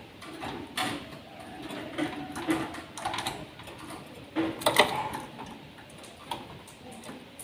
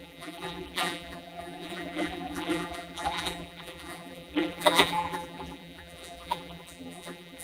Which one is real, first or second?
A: first